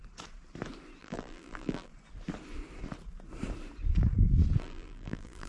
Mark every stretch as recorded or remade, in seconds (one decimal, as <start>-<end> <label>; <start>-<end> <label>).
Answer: 0.0-1.0 recorded; 1.0-1.9 remade; 1.9-4.6 recorded; 4.6-5.5 remade